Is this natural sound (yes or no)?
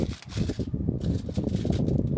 yes